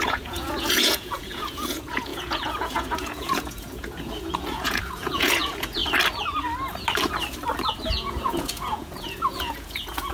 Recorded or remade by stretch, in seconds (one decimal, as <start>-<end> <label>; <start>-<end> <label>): 0.0-5.8 remade; 5.8-7.9 recorded; 7.9-10.1 remade